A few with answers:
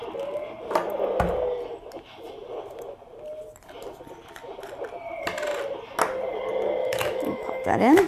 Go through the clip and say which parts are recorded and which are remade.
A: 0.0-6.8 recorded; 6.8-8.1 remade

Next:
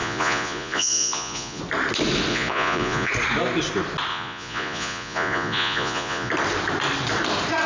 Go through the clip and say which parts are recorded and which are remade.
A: 0.0-1.6 remade; 1.6-2.3 recorded; 2.3-3.1 remade; 3.1-4.1 recorded; 4.1-6.3 remade; 6.3-7.7 recorded

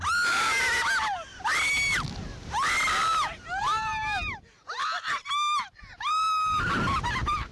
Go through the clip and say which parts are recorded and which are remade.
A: 0.0-7.5 recorded

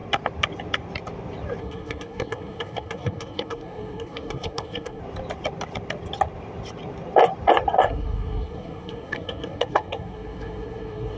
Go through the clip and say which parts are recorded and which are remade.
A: 0.0-1.6 recorded; 1.6-5.0 remade; 5.0-7.8 recorded; 7.8-11.2 remade